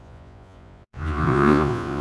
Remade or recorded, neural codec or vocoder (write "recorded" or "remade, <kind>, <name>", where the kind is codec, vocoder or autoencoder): remade, vocoder, Vocos